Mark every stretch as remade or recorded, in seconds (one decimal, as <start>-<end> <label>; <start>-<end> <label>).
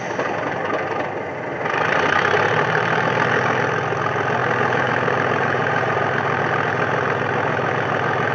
0.0-4.4 recorded; 4.4-6.4 remade; 6.4-8.3 recorded